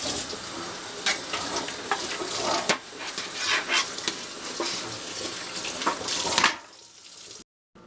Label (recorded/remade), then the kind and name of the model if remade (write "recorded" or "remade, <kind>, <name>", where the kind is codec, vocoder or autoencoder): recorded